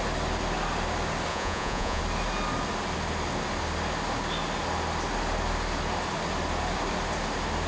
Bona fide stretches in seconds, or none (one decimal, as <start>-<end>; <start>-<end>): 0.0-1.3; 2.0-7.7